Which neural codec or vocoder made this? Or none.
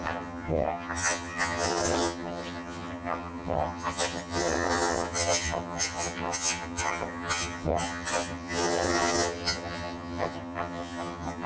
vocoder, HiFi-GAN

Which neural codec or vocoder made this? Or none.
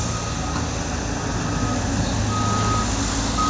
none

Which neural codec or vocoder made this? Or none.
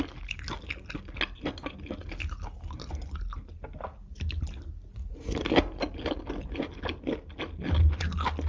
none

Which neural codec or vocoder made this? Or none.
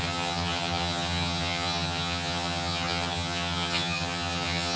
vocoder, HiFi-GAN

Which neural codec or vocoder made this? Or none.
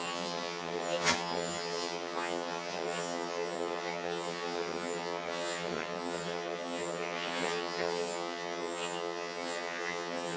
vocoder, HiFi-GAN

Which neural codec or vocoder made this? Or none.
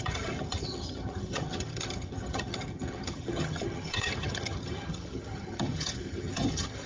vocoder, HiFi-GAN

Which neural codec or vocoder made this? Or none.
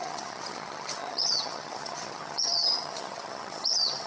vocoder, HiFi-GAN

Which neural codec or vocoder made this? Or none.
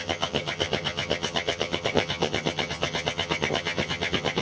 vocoder, HiFi-GAN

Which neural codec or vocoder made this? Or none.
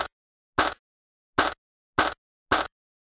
none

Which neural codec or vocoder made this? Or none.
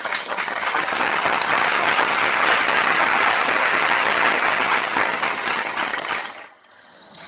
vocoder, HiFi-GAN